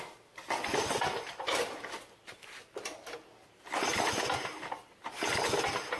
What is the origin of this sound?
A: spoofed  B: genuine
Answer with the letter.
B